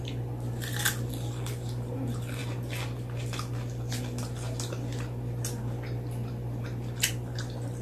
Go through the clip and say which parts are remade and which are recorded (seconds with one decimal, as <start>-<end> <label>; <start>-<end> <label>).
0.0-7.8 recorded